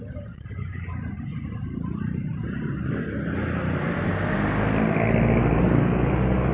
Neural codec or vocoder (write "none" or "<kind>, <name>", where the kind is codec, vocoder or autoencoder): none